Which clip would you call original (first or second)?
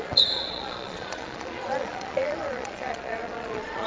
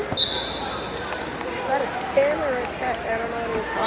second